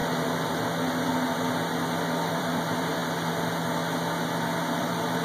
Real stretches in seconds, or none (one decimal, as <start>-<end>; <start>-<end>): 0.0-2.3; 3.0-4.8